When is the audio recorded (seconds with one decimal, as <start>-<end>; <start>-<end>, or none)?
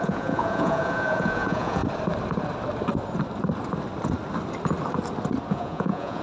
1.8-5.5